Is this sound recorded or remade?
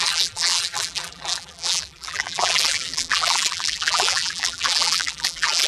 remade